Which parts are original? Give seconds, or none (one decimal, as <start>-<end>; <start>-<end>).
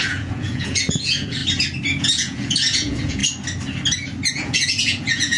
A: 1.4-2.0; 3.2-4.3